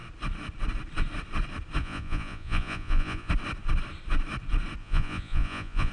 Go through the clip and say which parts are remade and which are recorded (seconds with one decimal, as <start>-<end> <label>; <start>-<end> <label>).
0.0-1.8 recorded; 1.8-3.3 remade; 3.3-4.8 recorded; 4.8-5.9 remade